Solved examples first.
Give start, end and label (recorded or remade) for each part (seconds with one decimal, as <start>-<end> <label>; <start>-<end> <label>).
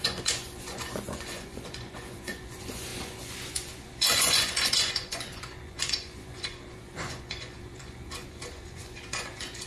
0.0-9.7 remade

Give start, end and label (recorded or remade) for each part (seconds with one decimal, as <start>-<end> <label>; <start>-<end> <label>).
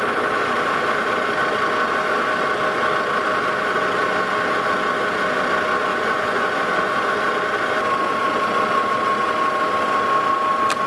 0.0-5.9 recorded; 5.9-7.1 remade; 7.1-10.9 recorded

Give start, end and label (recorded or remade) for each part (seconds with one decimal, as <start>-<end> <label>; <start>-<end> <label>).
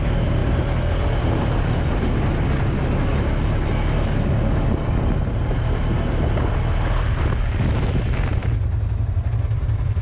0.0-10.0 recorded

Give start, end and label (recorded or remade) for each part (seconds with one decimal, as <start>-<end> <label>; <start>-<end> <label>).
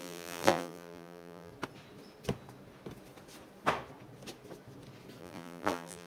0.0-1.5 remade; 1.5-5.2 recorded; 5.2-6.1 remade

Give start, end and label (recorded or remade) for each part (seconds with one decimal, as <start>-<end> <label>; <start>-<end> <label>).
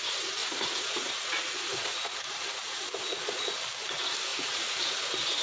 0.0-0.4 recorded; 0.4-3.6 remade; 3.6-4.3 recorded; 4.3-4.8 remade; 4.8-5.4 recorded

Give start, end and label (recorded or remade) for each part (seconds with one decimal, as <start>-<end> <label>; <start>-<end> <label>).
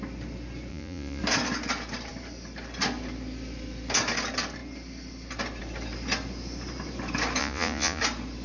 0.0-0.7 recorded; 0.7-1.2 remade; 1.2-7.4 recorded; 7.4-8.0 remade; 8.0-8.4 recorded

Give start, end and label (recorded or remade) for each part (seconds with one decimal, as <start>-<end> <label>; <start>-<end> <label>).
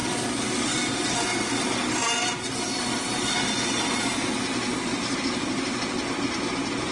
0.0-6.9 recorded